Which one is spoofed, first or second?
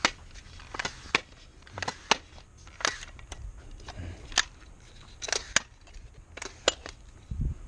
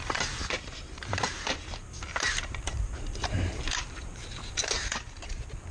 second